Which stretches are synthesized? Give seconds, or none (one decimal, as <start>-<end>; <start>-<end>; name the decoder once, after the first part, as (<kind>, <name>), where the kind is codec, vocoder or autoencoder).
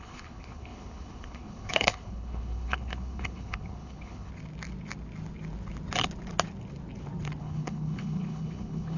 0.0-4.3 (codec, HILCodec); 7.4-9.0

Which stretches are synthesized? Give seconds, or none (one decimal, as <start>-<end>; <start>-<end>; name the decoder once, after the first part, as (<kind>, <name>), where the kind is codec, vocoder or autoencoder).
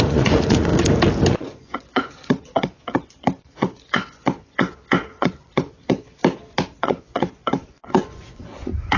0.0-0.7 (vocoder, Vocos); 1.3-6.2; 6.8-9.0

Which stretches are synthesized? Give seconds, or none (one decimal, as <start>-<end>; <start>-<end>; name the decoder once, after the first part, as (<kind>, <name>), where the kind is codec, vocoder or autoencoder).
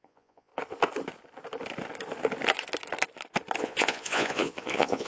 0.0-0.5 (vocoder, Vocos); 3.6-5.1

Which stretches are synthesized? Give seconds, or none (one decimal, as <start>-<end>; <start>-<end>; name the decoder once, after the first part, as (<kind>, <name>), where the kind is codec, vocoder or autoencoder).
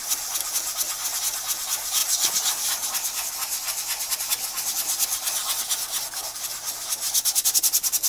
none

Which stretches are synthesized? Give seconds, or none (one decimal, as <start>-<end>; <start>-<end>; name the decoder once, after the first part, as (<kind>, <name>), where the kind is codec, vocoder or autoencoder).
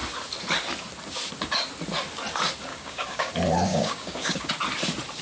2.7-3.3 (codec, DAC); 3.7-4.5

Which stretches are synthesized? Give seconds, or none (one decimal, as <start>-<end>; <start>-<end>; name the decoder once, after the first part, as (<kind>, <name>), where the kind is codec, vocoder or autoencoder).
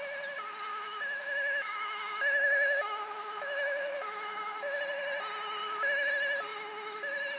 0.7-4.8 (autoencoder, DAC-VAE); 5.6-6.1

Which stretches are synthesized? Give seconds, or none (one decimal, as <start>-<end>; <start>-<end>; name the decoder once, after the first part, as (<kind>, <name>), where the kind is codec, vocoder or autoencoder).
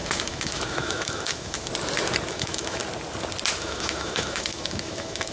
0.0-1.7 (autoencoder, DAC-VAE); 2.3-2.8; 3.6-5.3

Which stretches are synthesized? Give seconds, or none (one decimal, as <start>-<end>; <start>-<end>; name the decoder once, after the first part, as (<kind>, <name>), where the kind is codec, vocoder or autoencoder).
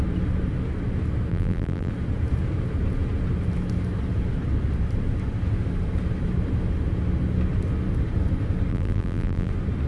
1.3-1.9 (vocoder, BigVGAN v2); 8.7-9.5